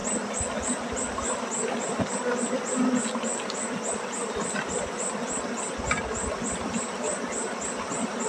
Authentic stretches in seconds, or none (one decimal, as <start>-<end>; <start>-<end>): 0.0-8.3